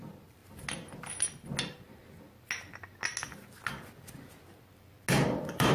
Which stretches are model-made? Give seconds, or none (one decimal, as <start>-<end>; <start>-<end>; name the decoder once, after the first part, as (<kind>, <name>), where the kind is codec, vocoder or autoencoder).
0.0-0.4 (vocoder, BigVGAN v2); 1.6-2.0; 5.2-5.7